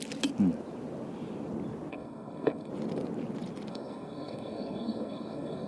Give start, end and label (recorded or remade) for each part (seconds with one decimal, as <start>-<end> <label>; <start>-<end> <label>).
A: 0.0-1.9 recorded; 1.9-2.7 remade; 2.7-3.7 recorded; 3.7-5.7 remade